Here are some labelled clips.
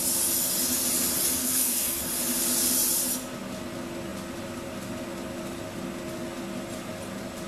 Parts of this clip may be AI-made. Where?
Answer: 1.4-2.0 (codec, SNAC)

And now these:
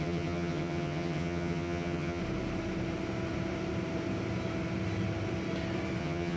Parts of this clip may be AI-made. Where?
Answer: 0.0-2.2 (vocoder, HiFi-GAN); 6.0-6.4

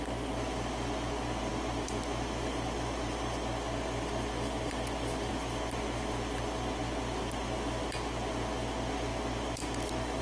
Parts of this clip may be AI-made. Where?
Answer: none

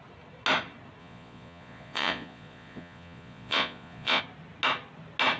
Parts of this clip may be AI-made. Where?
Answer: 1.0-4.2 (vocoder, Vocos)

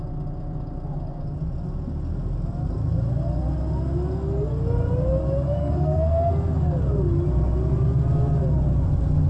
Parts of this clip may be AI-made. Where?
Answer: 5.6-6.3 (codec, SNAC)